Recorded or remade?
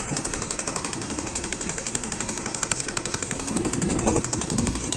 remade